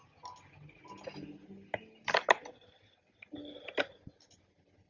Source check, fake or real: real